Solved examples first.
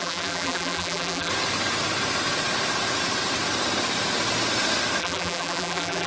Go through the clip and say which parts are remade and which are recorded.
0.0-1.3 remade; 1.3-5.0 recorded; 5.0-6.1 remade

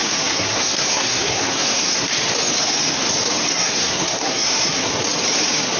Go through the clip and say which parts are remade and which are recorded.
0.0-2.1 remade; 2.1-3.5 recorded; 3.5-4.9 remade; 4.9-5.8 recorded

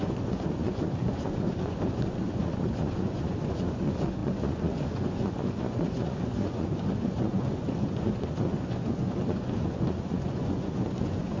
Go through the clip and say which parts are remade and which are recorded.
0.0-11.4 remade

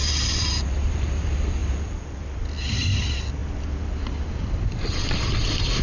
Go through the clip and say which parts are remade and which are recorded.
0.0-5.8 recorded